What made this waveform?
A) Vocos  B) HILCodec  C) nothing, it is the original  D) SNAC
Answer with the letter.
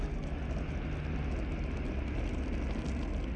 C